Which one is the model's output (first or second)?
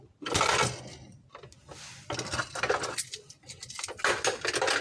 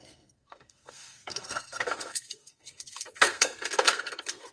second